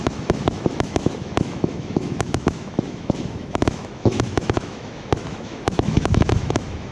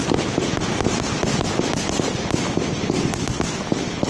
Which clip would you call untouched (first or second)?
second